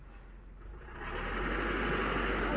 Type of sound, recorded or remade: recorded